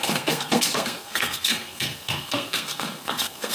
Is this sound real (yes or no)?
no